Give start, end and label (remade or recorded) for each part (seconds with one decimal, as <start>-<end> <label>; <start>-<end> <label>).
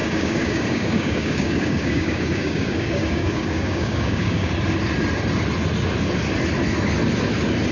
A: 0.0-4.5 remade; 4.5-7.7 recorded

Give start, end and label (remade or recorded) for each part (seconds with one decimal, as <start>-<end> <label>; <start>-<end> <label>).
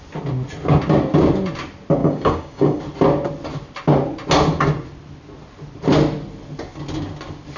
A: 0.0-2.0 recorded; 2.0-2.8 remade; 2.8-7.6 recorded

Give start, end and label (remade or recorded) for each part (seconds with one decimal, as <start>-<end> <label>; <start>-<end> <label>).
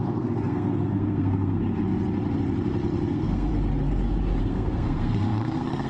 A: 0.0-1.6 remade; 1.6-3.1 recorded; 3.1-3.5 remade; 3.5-4.4 recorded; 4.4-5.9 remade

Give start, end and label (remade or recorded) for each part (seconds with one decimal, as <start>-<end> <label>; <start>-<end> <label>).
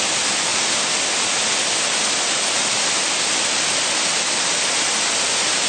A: 0.0-5.7 recorded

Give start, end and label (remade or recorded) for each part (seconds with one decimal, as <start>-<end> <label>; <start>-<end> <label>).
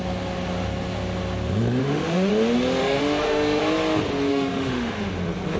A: 0.0-1.8 recorded; 1.8-2.3 remade; 2.3-2.8 recorded; 2.8-3.6 remade; 3.6-4.3 recorded; 4.3-5.1 remade; 5.1-5.6 recorded